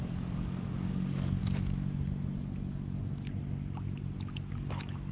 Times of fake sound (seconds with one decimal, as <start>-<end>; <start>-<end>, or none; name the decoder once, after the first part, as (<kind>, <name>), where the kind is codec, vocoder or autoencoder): 0.0-1.4 (codec, DAC); 4.5-5.1